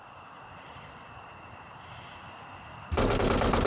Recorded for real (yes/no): yes